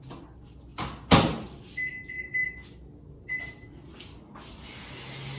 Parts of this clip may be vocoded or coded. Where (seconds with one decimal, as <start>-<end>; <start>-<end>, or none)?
none